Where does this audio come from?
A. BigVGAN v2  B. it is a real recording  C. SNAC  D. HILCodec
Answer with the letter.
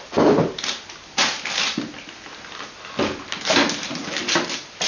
B